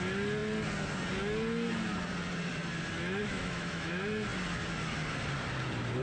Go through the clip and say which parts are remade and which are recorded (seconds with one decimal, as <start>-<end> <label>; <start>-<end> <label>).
0.0-3.2 recorded; 3.2-3.9 remade; 3.9-6.0 recorded